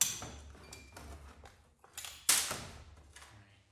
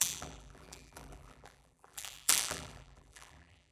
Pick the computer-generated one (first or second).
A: second